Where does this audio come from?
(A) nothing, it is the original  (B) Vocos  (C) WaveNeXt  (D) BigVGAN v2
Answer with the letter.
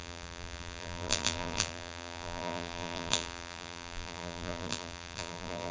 D